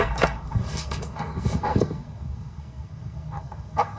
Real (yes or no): no